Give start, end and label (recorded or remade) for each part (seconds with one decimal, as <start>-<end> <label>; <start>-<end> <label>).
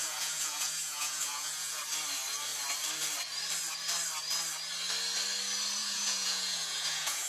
0.0-1.8 remade; 1.8-5.8 recorded; 5.8-7.3 remade